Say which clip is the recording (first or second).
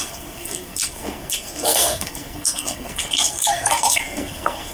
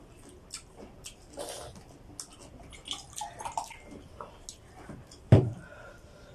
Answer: second